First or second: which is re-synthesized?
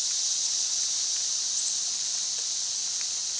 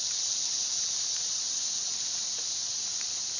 second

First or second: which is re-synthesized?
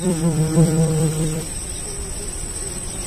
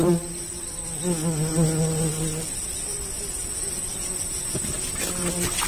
first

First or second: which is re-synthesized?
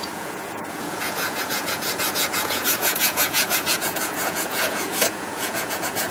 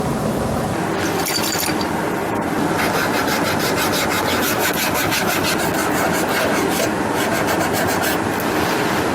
first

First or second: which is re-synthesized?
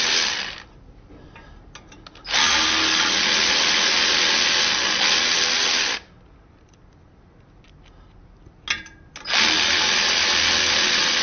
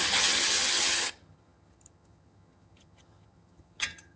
second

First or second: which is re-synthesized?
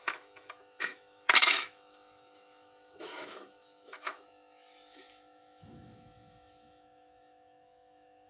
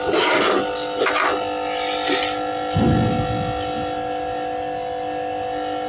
first